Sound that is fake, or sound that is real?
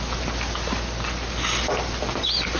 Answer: real